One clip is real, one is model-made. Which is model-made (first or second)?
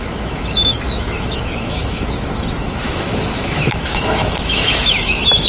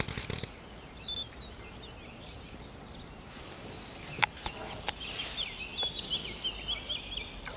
first